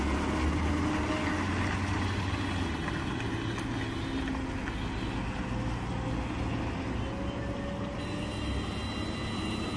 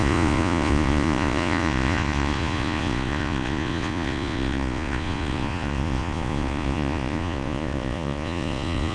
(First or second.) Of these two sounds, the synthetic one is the second